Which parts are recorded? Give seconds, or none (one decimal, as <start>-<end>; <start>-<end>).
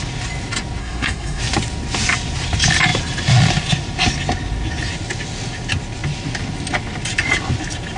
0.0-0.8; 1.4-8.0